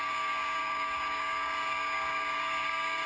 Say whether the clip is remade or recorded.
remade